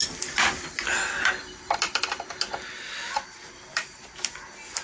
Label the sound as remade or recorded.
recorded